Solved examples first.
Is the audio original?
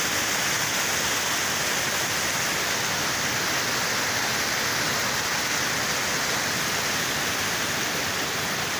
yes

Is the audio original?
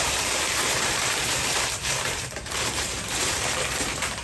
no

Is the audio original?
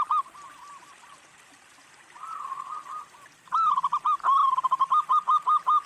yes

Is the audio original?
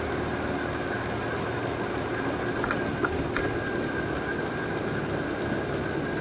yes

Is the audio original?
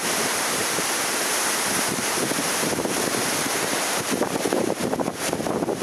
no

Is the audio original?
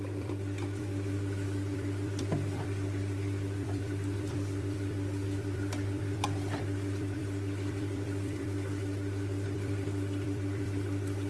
no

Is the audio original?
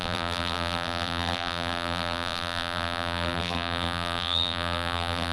no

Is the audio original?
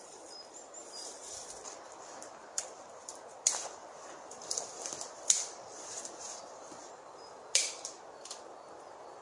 no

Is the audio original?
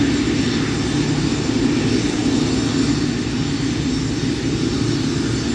yes